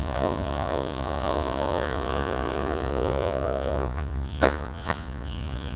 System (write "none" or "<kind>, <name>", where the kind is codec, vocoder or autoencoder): vocoder, Vocos